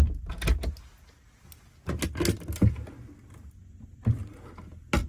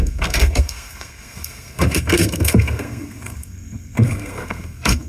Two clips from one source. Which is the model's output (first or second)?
second